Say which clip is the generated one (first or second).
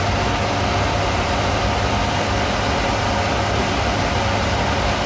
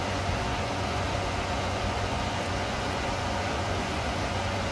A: second